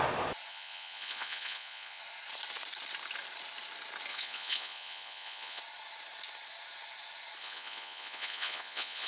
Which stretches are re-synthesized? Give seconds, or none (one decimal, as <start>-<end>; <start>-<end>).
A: 0.5-2.0; 4.1-5.6; 7.4-9.1